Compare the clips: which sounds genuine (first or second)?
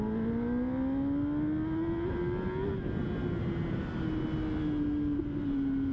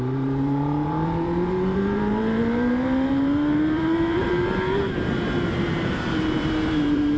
first